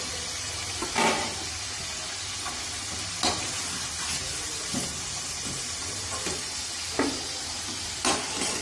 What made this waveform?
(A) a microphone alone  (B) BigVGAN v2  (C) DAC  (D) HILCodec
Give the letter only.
A